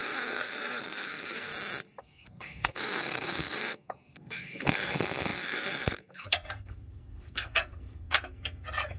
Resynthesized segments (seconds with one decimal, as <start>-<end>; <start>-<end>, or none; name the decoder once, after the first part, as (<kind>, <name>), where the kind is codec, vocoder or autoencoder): 0.0-1.5 (codec, SNAC); 2.0-9.0